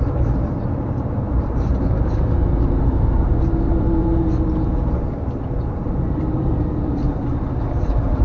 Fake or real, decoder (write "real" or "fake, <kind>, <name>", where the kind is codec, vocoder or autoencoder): fake, vocoder, BigVGAN v2